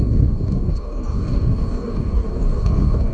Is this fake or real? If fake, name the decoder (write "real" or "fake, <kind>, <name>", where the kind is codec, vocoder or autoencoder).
fake, codec, DAC